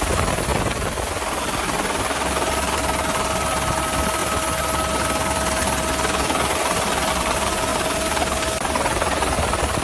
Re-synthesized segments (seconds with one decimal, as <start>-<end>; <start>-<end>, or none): none

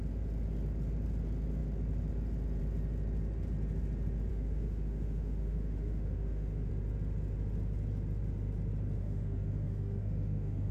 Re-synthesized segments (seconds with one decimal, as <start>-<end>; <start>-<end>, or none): 4.3-6.7; 9.0-10.7